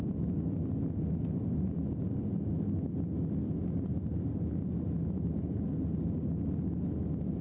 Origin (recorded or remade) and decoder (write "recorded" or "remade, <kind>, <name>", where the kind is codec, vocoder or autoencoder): recorded